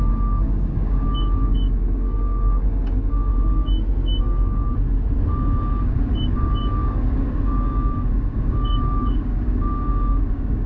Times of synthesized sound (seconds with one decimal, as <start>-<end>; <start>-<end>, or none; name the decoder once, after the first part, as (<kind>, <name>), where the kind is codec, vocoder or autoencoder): 0.0-3.3 (codec, DAC); 4.2-4.7; 5.8-10.7